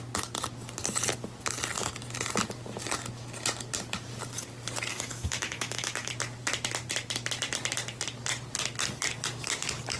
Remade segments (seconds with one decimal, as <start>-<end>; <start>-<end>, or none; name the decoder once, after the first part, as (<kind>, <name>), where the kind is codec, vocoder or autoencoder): 4.9-6.1 (autoencoder, DAC-VAE)